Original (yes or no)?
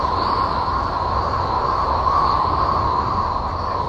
yes